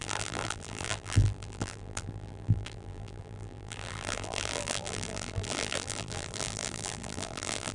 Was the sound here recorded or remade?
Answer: remade